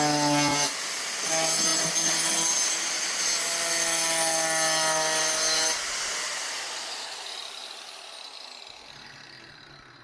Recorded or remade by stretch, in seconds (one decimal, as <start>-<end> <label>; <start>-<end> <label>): 0.0-10.0 recorded

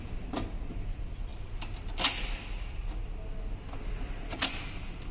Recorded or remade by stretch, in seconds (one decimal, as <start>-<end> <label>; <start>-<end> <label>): 0.0-5.1 recorded

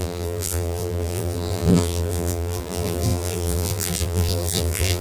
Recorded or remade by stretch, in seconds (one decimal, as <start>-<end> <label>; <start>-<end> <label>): 0.0-5.0 remade

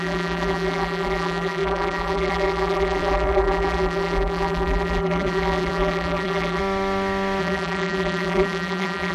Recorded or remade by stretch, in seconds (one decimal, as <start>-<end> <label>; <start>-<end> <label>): 0.0-6.6 remade; 6.6-7.4 recorded; 7.4-9.1 remade

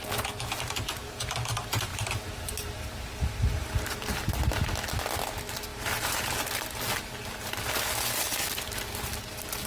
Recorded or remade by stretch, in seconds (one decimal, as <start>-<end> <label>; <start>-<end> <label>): 0.0-1.9 recorded; 1.9-4.3 remade; 4.3-5.7 recorded; 5.7-6.3 remade; 6.3-9.7 recorded